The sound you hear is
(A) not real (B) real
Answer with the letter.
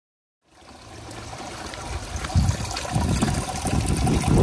B